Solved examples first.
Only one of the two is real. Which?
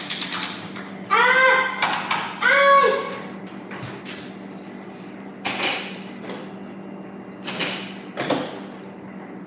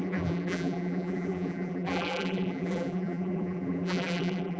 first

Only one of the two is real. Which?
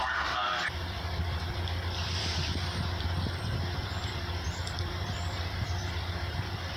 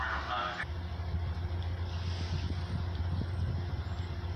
second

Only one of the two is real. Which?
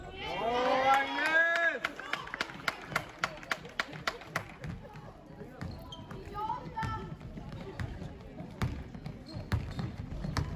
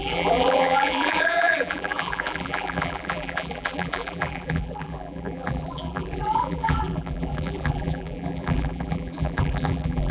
first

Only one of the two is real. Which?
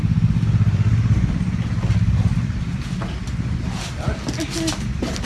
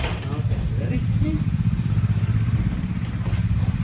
first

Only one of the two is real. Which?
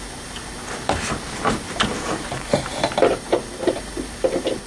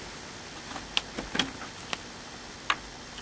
second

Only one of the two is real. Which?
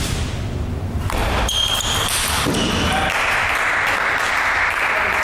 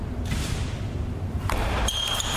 first